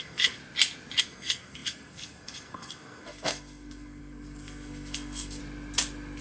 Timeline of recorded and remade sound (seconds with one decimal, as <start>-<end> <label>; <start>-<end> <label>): 0.0-0.4 remade; 0.4-1.0 recorded; 1.0-5.4 remade; 5.4-6.2 recorded